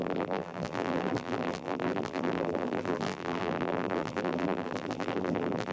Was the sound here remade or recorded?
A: remade